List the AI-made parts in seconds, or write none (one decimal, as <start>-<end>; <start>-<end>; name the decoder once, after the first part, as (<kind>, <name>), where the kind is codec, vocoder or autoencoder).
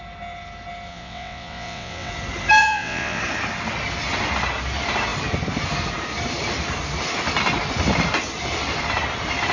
0.9-2.1 (vocoder, WaveNeXt); 2.6-3.2